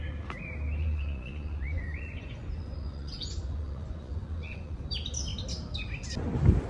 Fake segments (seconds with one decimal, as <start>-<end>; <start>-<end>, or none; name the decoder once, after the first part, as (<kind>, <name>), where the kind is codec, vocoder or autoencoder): 0.8-4.8 (vocoder, Vocos)